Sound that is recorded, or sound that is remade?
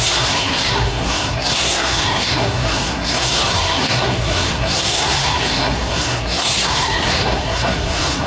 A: remade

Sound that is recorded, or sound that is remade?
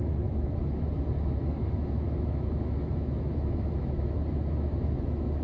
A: remade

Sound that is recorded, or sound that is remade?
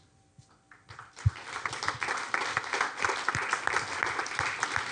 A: recorded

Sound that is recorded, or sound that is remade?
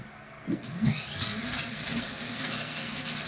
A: remade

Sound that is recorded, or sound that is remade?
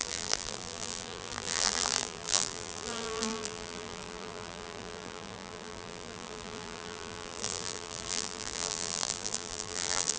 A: remade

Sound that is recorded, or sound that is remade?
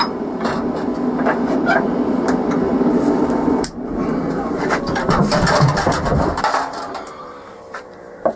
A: remade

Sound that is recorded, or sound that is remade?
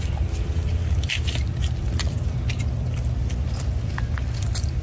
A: remade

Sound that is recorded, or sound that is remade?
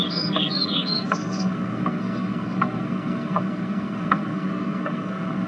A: remade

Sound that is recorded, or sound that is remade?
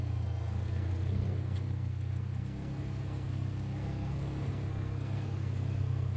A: remade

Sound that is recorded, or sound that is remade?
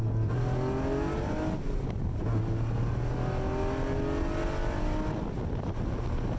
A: recorded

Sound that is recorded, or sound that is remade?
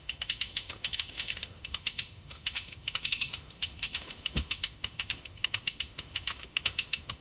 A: remade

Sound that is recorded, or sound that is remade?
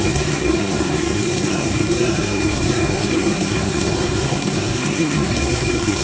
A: remade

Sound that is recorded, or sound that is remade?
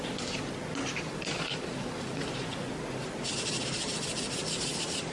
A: recorded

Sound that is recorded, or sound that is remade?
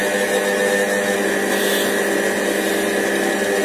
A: recorded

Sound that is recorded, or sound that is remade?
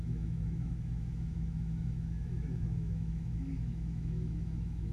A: remade